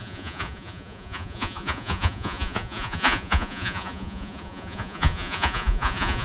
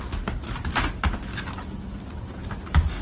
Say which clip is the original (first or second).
second